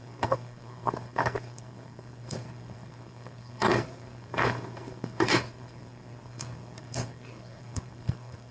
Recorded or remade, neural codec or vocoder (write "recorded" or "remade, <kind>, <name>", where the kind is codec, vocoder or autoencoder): remade, codec, SNAC